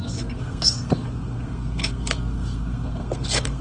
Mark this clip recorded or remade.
remade